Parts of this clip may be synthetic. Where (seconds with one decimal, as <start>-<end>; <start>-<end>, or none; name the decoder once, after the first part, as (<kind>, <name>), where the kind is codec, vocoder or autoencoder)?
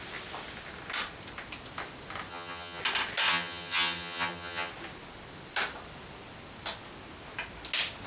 2.3-2.8 (vocoder, HiFi-GAN); 3.3-4.7